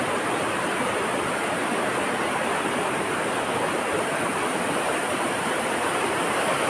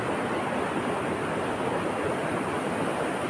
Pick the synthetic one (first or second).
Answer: first